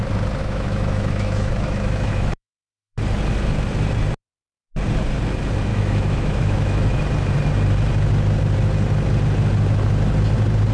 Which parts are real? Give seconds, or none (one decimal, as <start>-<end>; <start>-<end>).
0.0-0.4; 3.0-5.7; 7.0-10.7